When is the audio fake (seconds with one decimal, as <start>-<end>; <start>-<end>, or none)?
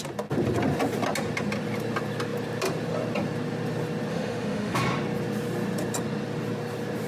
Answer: 4.1-4.8